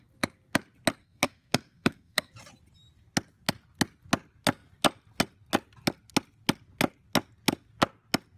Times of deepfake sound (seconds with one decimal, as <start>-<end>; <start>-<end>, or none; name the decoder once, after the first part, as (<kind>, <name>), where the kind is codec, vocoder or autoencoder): 1.0-2.3 (codec, SNAC)